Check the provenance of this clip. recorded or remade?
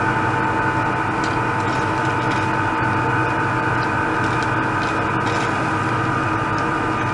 recorded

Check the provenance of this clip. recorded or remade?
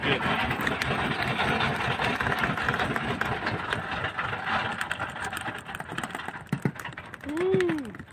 recorded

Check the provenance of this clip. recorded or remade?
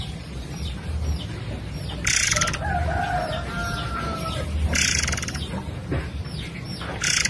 remade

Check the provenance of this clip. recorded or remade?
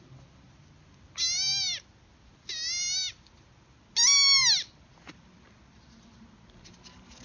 recorded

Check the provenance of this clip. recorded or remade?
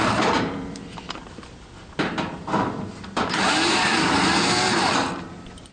remade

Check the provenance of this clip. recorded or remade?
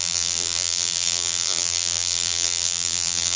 remade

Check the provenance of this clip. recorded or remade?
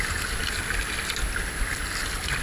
recorded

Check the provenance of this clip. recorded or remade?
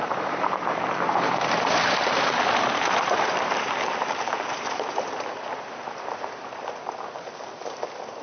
remade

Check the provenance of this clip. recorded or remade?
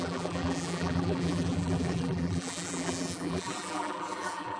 remade